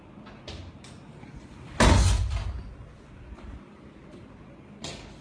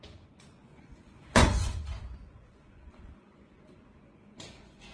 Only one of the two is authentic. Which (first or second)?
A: first